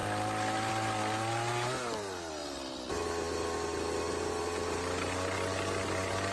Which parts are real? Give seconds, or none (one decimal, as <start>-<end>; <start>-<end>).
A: 0.0-6.3